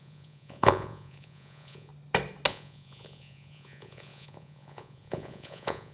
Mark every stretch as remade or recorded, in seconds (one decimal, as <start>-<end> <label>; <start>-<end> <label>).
0.0-1.9 remade; 1.9-2.5 recorded; 2.5-5.9 remade